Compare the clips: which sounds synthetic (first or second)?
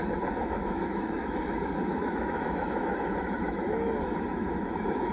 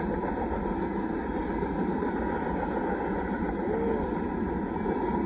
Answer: first